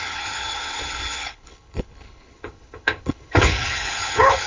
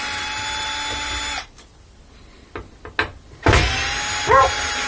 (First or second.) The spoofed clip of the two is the first